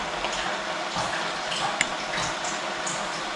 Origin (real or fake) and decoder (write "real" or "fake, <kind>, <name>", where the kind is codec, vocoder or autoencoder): real